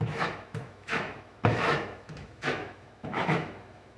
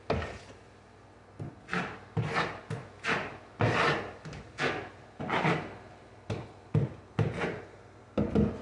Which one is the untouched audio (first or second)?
second